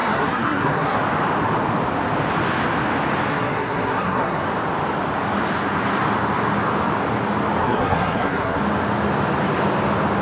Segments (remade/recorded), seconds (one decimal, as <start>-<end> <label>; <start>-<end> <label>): 0.0-1.0 remade; 1.0-3.3 recorded; 3.3-4.4 remade; 4.4-7.6 recorded; 7.6-8.6 remade; 8.6-10.2 recorded